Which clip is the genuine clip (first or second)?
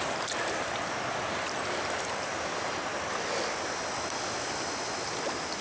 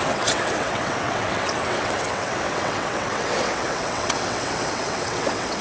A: first